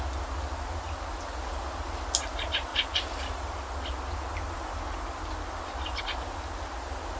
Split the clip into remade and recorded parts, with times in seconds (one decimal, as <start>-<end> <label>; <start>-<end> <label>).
0.0-7.2 recorded